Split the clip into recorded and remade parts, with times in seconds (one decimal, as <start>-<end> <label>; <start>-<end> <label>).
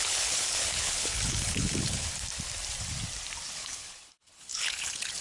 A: 0.0-2.1 remade; 2.1-3.5 recorded; 3.5-5.2 remade